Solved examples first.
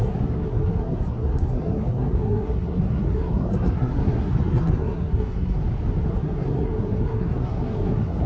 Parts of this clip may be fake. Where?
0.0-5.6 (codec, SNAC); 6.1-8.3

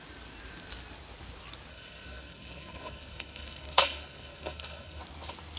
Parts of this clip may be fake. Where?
1.7-5.0 (codec, SNAC)